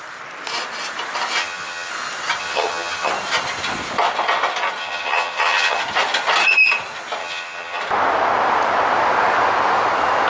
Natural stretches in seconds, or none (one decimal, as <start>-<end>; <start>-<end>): 0.0-1.4; 1.9-2.4; 3.1-4.8; 5.8-7.2; 7.8-10.3